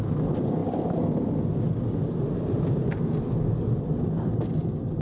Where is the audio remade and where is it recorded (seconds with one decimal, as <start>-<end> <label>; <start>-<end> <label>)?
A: 0.0-5.0 recorded